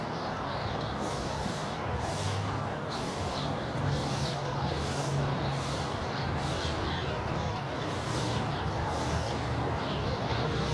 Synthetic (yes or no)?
yes